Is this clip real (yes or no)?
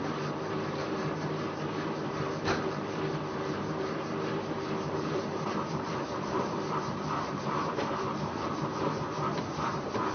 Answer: no